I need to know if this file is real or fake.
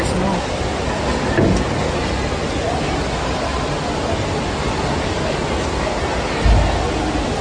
real